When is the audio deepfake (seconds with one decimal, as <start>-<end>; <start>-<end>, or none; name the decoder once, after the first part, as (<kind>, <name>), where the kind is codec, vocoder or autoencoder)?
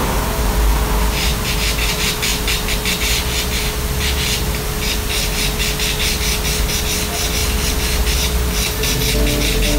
none